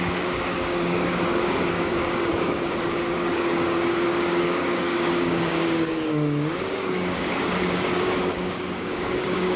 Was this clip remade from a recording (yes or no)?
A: yes